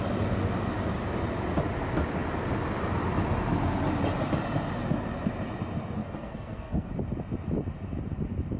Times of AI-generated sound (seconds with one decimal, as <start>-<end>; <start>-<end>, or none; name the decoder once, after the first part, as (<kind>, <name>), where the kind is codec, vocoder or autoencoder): 6.0-6.9 (codec, SNAC)